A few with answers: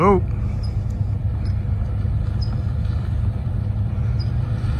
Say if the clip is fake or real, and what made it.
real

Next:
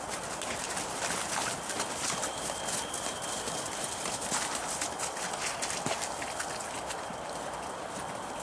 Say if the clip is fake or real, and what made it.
real